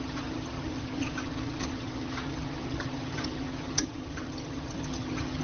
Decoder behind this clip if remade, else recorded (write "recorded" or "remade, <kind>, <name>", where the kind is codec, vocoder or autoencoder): remade, vocoder, HiFi-GAN